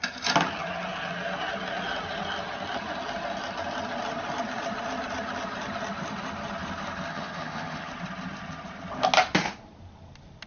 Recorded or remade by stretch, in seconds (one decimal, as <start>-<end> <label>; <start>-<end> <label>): 0.0-7.1 recorded; 7.1-7.9 remade; 7.9-10.5 recorded